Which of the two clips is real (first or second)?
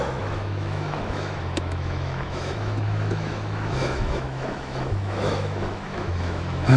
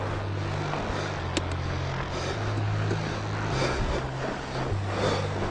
second